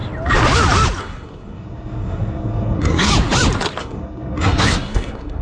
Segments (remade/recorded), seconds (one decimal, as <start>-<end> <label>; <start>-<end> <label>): 0.0-1.0 recorded; 1.0-3.1 remade; 3.1-3.8 recorded; 3.8-5.4 remade